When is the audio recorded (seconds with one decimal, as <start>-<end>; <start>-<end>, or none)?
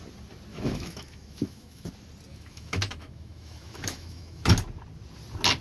0.0-0.5; 1.9-2.3; 4.5-5.6